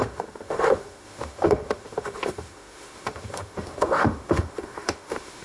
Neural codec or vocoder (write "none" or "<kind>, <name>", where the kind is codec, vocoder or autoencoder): autoencoder, DAC-VAE